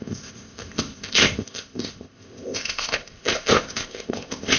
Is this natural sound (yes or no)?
no